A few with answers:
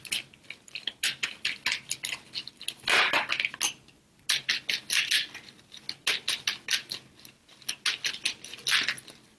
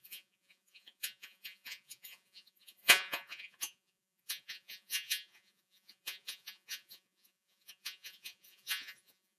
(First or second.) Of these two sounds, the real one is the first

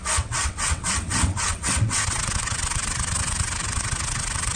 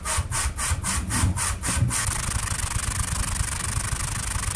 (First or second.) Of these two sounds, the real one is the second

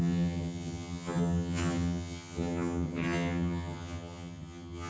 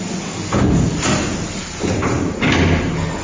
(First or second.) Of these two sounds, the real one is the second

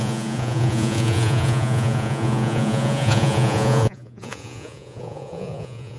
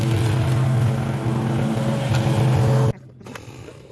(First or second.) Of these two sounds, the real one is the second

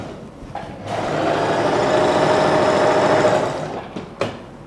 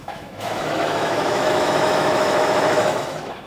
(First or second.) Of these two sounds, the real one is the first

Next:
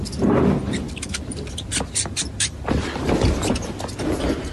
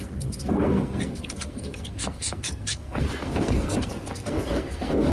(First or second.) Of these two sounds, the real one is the first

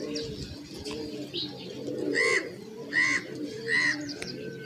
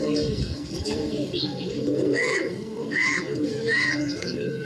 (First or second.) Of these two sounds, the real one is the first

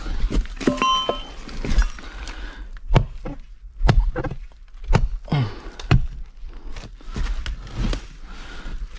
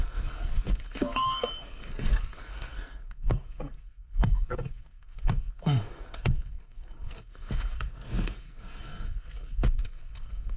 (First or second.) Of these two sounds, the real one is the first